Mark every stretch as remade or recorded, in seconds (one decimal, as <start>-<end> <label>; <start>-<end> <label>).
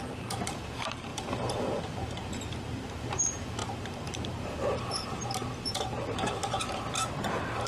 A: 0.0-6.4 remade; 6.4-7.1 recorded; 7.1-7.7 remade